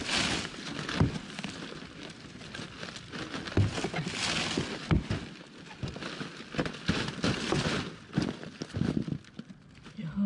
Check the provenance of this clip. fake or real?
real